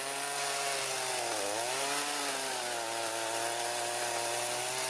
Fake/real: real